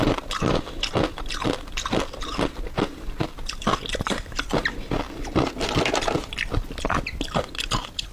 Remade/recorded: recorded